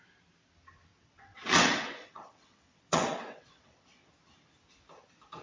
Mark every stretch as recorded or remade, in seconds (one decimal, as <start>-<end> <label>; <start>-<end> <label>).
0.0-0.9 recorded; 0.9-4.1 remade; 4.1-5.4 recorded